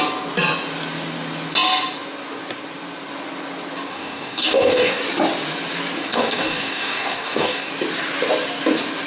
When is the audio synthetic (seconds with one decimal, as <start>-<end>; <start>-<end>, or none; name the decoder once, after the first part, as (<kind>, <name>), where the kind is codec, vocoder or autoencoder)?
3.9-5.0 (codec, DAC); 6.1-7.7